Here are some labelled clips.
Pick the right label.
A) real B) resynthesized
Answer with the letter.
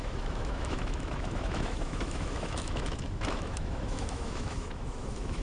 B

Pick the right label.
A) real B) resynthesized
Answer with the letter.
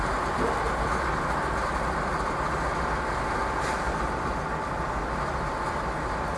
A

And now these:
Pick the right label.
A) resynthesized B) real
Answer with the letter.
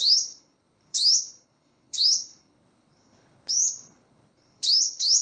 A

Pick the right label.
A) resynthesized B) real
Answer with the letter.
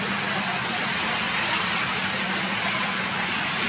B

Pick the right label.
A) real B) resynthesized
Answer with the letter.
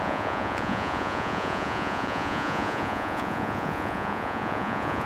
B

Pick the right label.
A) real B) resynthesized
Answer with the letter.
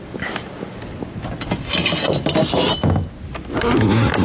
A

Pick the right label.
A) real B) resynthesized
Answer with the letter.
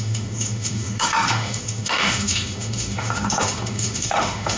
B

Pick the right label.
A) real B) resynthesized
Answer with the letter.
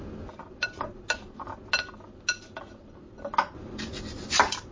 A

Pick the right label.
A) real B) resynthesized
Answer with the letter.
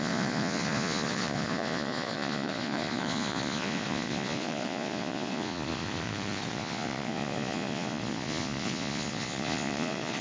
B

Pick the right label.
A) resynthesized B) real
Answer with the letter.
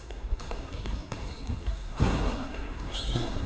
A